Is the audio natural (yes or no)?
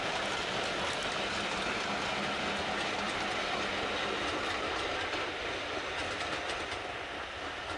yes